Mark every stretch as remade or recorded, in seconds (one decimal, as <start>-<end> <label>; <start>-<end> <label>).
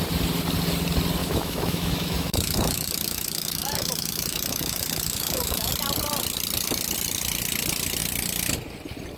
0.0-1.2 recorded; 1.2-5.7 remade; 5.7-9.2 recorded